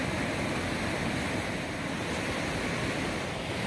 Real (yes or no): yes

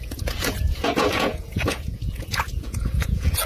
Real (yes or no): no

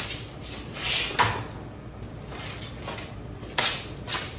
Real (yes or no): yes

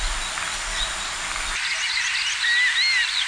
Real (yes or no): yes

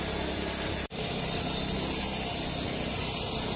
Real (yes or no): yes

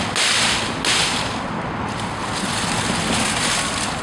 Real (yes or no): yes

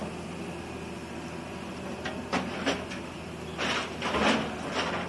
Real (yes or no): yes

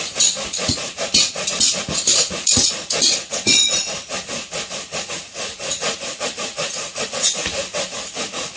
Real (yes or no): no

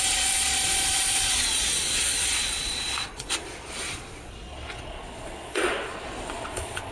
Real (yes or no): no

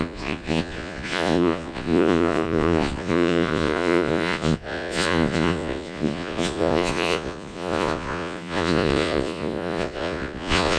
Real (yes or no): no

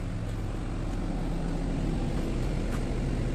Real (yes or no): yes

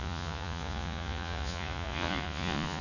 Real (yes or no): no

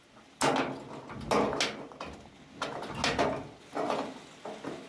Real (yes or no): yes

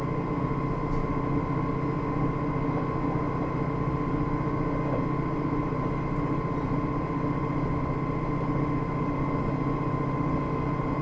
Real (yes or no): yes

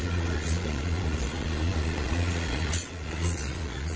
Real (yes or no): no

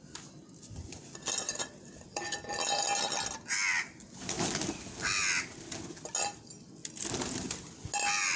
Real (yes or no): yes